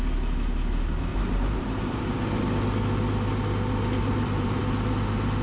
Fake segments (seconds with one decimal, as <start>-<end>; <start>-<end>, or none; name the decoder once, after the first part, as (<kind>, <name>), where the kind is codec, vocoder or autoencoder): 1.1-2.0 (vocoder, BigVGAN v2); 4.0-4.6